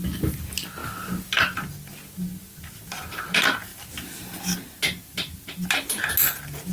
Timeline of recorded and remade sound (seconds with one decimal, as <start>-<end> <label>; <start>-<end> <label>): 0.0-6.7 recorded

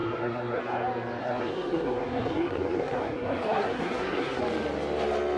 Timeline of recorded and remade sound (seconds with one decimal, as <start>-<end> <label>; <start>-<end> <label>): 0.0-0.6 remade; 0.6-1.2 recorded; 1.2-4.4 remade; 4.4-5.4 recorded

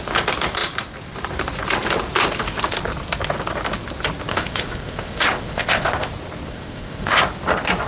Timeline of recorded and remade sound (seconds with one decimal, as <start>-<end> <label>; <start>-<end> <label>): 0.0-4.3 recorded; 4.3-6.1 remade; 6.1-6.5 recorded; 6.5-7.2 remade; 7.2-7.9 recorded